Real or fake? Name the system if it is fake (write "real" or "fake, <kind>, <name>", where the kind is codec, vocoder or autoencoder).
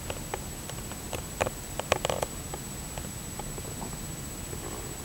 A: real